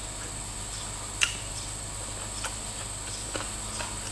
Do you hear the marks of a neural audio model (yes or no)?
no